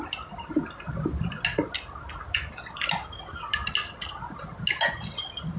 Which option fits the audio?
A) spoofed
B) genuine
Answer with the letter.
B